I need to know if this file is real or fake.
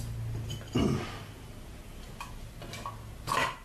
real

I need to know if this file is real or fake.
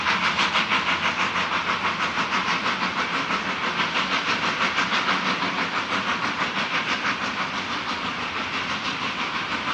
fake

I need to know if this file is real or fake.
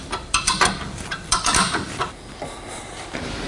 fake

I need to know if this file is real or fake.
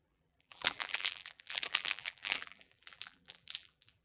fake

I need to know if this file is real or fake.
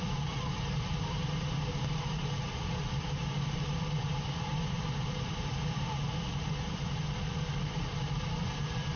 fake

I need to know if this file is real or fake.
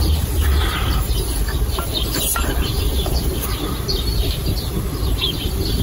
fake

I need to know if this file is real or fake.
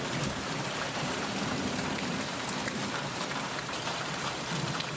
fake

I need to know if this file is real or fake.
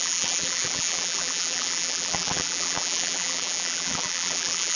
fake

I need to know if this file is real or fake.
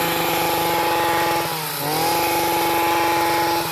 real